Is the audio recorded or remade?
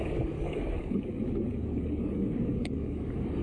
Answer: remade